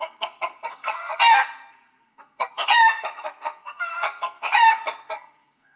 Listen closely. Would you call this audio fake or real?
fake